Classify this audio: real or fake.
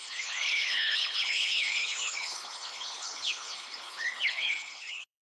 fake